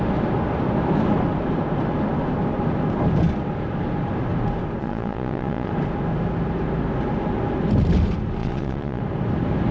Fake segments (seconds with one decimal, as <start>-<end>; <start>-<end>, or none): 4.8-5.7; 8.4-9.0